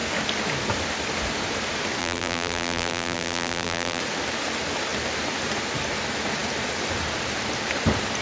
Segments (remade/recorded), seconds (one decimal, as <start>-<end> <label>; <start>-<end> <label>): 0.0-2.0 recorded; 2.0-4.0 remade; 4.0-8.2 recorded